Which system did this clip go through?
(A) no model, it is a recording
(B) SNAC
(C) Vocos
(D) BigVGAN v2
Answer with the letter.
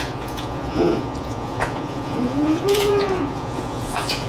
C